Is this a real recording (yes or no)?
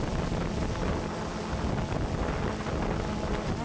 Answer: yes